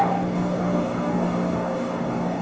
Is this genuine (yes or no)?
no